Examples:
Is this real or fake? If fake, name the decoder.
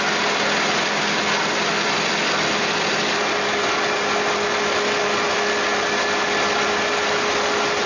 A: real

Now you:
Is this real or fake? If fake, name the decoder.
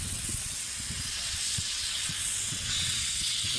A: fake, vocoder, WaveNeXt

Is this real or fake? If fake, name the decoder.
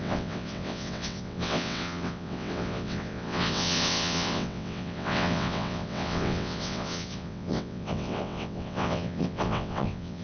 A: fake, vocoder, WaveNeXt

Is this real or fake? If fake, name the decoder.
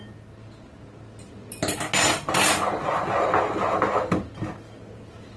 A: real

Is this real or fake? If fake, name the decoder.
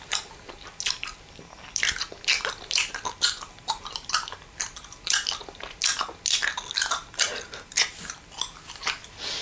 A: real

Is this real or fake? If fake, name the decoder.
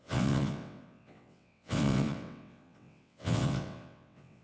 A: fake, vocoder, WaveNeXt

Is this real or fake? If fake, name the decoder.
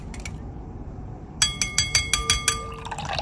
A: real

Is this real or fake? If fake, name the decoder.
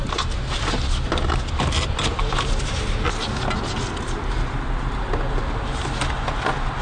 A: real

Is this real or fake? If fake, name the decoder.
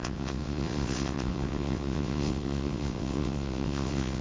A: fake, vocoder, WaveNeXt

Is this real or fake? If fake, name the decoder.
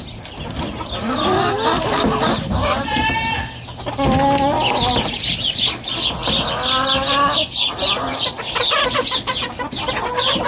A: real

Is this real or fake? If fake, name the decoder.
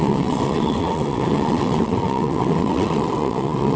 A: fake, vocoder, WaveNeXt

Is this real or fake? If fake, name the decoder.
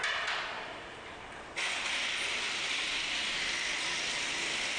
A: real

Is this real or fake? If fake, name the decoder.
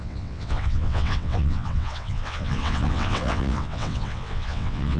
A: fake, vocoder, WaveNeXt